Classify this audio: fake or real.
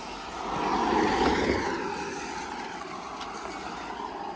real